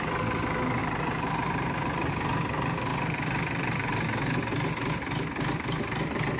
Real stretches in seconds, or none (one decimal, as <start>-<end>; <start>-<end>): 0.0-0.8; 2.1-2.9; 3.9-6.4